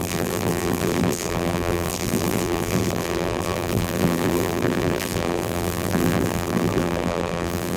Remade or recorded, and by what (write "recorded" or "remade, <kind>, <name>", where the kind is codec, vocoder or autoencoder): remade, vocoder, BigVGAN v2